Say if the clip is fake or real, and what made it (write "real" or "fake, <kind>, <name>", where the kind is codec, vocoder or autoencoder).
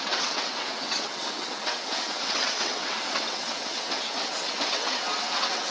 fake, vocoder, WaveNeXt